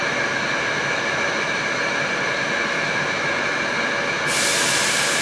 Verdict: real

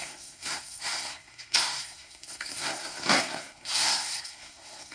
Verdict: fake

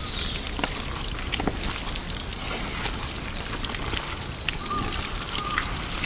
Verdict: real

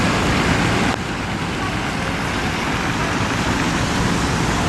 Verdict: real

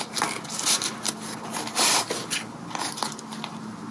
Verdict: real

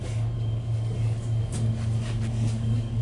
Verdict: fake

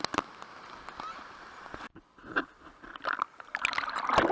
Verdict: real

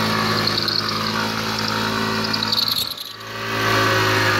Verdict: real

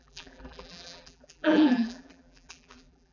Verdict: fake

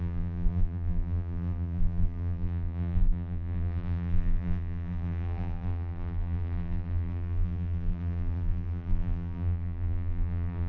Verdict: fake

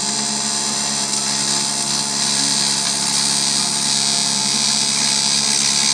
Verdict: real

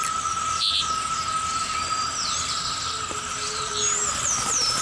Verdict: real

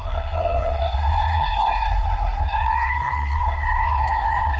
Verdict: fake